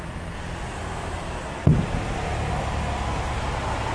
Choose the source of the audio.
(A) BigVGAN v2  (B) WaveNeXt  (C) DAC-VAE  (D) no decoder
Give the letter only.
D